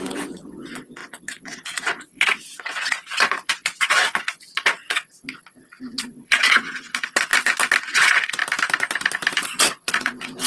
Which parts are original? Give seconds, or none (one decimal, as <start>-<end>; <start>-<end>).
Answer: 7.3-7.8; 8.4-9.6